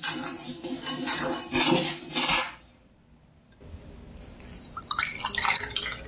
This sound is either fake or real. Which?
real